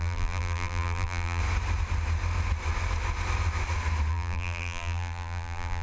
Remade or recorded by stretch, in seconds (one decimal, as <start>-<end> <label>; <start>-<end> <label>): 0.0-1.4 remade; 1.4-4.1 recorded; 4.1-5.8 remade